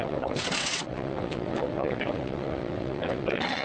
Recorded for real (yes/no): no